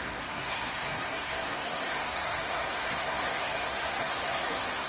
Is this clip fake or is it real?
fake